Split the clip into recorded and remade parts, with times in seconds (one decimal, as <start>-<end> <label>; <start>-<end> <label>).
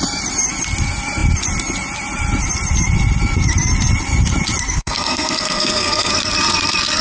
0.0-4.7 recorded; 4.7-6.1 remade; 6.1-7.0 recorded